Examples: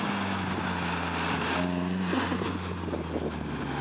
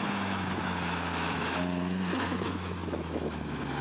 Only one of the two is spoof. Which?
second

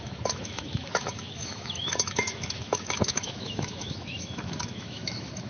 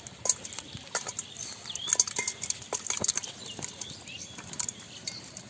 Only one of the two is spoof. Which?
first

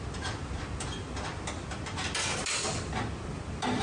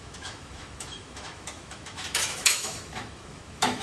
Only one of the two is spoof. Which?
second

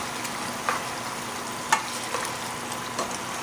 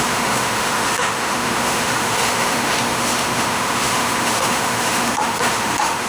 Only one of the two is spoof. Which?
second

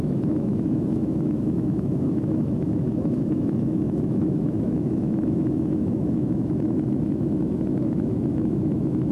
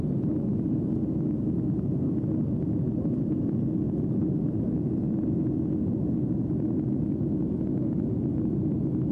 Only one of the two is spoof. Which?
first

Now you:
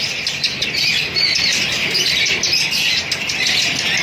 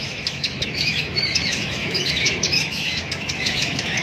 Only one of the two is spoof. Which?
second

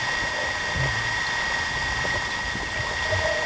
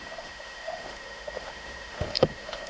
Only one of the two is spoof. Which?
second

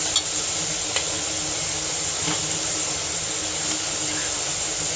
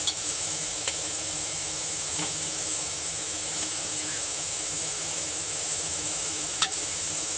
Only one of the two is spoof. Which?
second